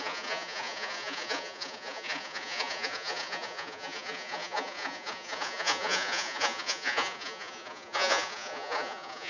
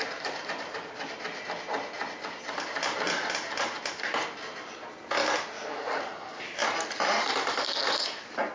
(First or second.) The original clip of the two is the second